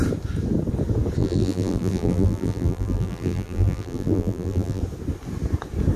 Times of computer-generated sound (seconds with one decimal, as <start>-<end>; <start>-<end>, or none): 1.2-4.8